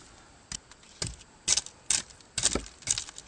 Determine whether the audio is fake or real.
real